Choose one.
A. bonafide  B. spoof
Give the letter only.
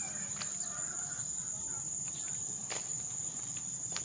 A